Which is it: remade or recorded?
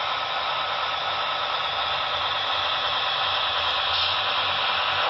recorded